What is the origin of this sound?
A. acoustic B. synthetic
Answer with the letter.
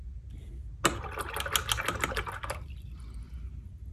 A